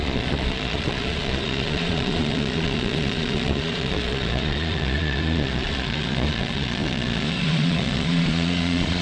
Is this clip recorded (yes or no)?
no